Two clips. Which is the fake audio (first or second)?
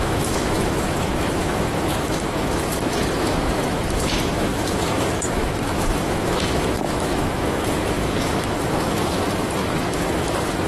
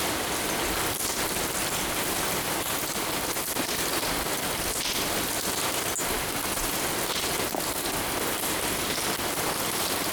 first